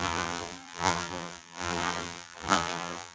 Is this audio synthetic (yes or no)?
yes